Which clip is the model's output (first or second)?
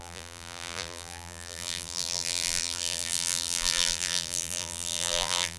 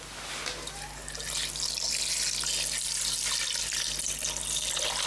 first